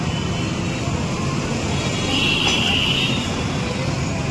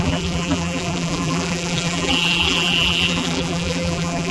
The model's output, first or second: second